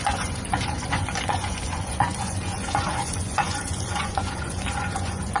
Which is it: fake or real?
fake